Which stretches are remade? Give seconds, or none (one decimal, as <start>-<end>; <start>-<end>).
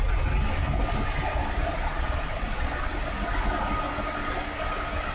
1.7-2.9